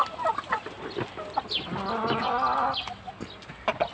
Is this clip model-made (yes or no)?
no